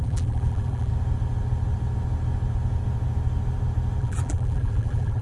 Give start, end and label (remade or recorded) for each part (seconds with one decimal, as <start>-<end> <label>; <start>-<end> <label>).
0.0-0.9 remade; 0.9-4.0 recorded; 4.0-5.2 remade